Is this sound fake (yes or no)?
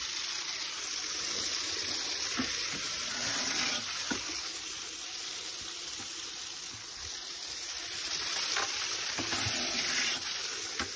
no